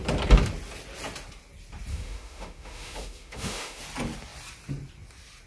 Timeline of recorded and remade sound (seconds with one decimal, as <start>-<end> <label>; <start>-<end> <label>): 0.0-1.9 recorded; 1.9-3.8 remade; 3.8-5.5 recorded